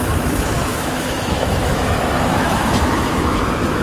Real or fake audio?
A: fake